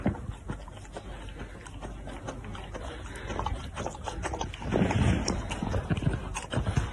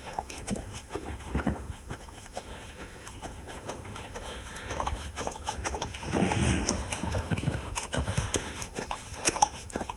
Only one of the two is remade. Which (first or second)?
second